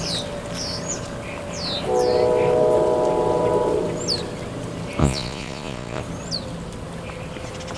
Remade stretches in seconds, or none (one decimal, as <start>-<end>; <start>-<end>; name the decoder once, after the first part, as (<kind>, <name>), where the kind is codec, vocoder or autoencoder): 5.0-6.0 (vocoder, Vocos)